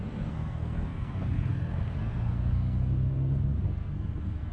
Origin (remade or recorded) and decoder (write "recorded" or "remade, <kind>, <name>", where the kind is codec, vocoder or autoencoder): remade, codec, SNAC